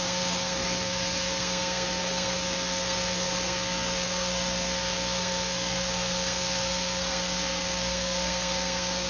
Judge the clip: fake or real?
fake